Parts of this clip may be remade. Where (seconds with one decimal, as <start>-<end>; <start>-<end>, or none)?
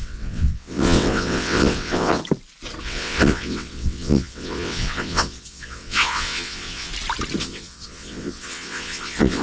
0.0-2.2; 2.8-6.9; 7.4-9.4